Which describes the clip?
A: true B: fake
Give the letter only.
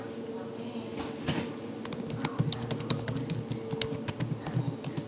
A